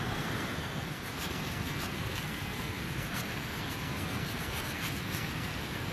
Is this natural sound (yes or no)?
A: no